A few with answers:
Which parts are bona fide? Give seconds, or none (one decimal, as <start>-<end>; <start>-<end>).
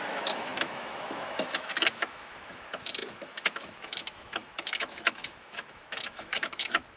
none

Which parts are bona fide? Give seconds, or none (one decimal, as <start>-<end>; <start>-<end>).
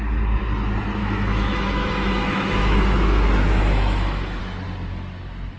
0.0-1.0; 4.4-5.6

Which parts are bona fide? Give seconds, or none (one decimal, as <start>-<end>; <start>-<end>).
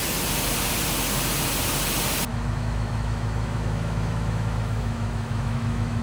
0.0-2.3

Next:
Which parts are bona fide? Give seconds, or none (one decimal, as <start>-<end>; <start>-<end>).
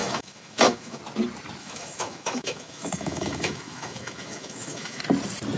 1.0-1.6; 5.0-5.6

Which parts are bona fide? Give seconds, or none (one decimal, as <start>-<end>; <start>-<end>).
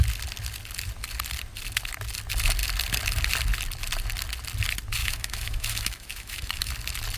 0.0-5.0; 6.7-7.2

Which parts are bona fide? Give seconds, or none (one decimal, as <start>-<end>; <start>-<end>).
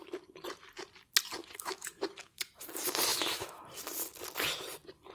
0.0-1.4; 2.5-3.1; 3.6-5.1